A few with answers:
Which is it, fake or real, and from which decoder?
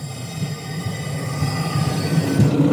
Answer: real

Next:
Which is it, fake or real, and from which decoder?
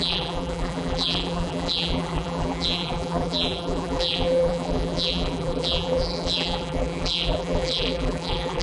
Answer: fake, vocoder, BigVGAN v2